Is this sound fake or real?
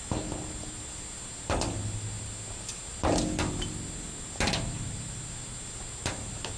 real